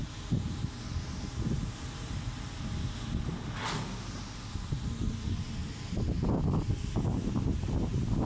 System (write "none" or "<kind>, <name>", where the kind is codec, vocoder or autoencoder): none